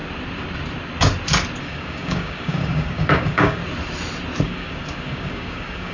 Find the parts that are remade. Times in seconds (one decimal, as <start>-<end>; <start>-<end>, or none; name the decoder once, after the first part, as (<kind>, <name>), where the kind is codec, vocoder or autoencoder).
1.6-3.6 (codec, DAC); 4.4-5.9